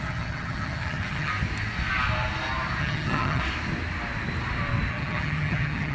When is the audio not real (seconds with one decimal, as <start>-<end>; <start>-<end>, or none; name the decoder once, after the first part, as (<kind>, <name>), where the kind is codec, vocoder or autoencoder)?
0.0-1.3 (vocoder, HiFi-GAN); 2.8-3.4; 4.9-5.9